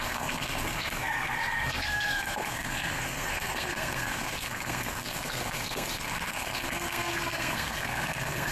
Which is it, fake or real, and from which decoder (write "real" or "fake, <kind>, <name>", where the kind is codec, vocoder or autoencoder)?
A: fake, codec, SNAC